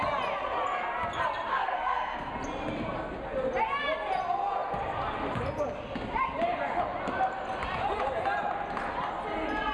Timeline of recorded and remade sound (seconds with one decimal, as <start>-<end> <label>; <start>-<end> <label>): 0.0-1.5 recorded; 1.5-2.3 remade; 2.3-9.7 recorded